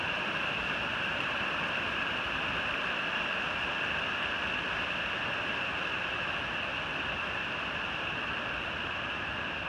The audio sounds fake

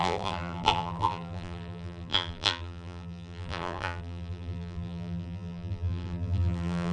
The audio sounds fake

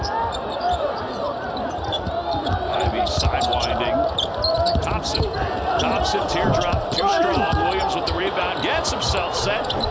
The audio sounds fake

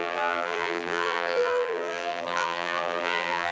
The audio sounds fake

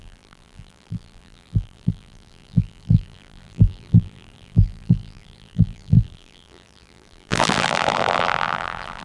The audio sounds fake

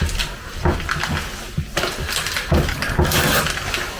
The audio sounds real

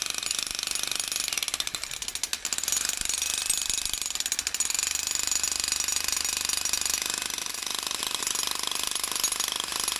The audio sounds real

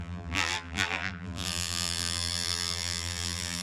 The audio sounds fake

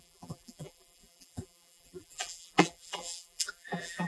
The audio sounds fake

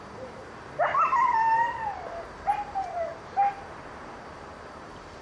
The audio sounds fake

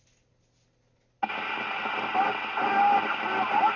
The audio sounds real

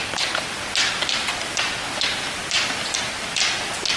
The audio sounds real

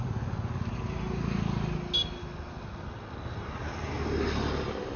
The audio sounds real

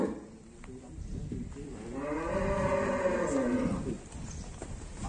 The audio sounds real